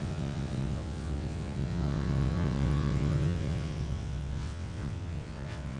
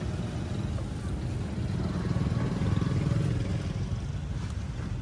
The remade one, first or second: first